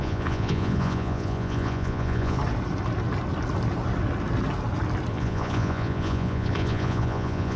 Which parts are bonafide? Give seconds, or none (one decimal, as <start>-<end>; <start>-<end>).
2.4-5.1